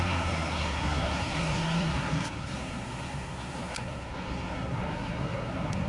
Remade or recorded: remade